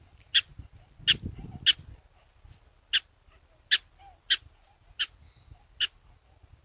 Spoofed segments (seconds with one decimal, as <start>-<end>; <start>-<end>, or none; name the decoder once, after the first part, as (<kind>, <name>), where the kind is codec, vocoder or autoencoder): none